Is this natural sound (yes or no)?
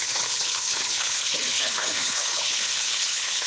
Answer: no